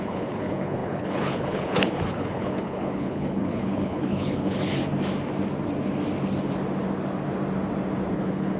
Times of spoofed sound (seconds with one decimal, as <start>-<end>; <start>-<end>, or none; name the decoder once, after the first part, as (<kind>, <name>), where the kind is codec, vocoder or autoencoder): 0.0-4.8 (codec, HILCodec); 8.1-8.6

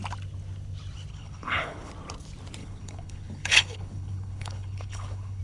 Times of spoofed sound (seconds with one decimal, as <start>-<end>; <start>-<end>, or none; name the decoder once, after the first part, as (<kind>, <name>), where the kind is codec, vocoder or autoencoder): 1.1-1.9 (codec, HILCodec); 2.6-5.4

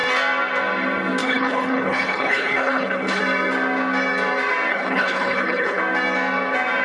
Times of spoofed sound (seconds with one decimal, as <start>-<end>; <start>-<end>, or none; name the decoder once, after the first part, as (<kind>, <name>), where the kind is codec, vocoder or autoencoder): 1.2-3.2 (codec, HILCodec); 4.7-5.8